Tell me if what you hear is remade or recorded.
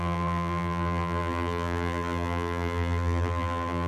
remade